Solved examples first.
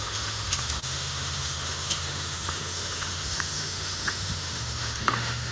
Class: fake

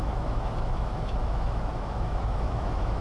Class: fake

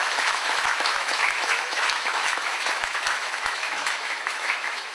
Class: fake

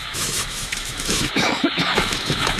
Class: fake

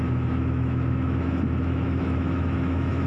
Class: fake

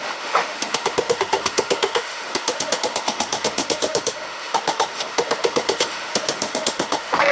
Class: fake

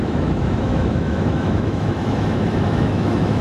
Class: fake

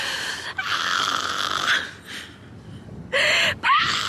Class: real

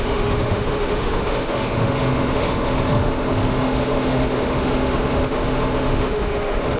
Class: fake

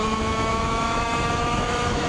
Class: fake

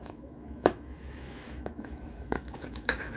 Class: fake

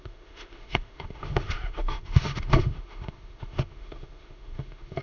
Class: fake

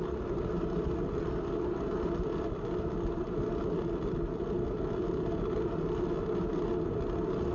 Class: real